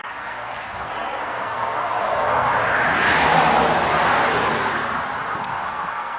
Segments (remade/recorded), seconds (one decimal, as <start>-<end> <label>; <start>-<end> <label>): 0.0-2.5 remade; 2.5-5.4 recorded; 5.4-6.2 remade